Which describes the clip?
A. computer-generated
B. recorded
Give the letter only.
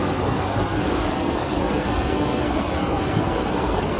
A